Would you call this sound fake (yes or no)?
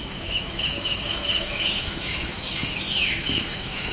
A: yes